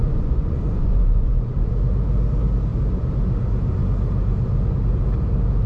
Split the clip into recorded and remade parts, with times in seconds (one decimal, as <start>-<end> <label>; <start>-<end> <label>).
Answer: 0.0-1.7 remade; 1.7-5.7 recorded